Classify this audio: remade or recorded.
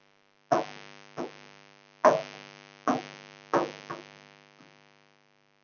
recorded